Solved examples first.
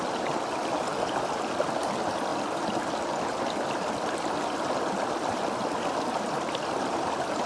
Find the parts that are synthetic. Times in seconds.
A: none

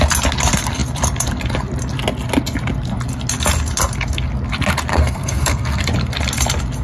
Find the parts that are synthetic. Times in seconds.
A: 4.9-5.8

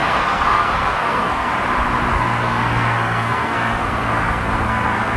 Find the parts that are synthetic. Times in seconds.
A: 0.0-1.5; 2.1-5.2

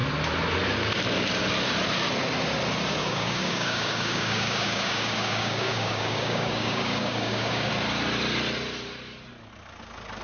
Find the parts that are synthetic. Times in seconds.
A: 3.0-7.7

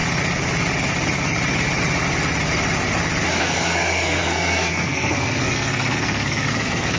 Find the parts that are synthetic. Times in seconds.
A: 3.4-7.0